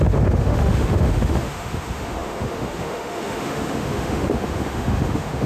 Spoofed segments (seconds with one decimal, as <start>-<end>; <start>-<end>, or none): 0.0-5.5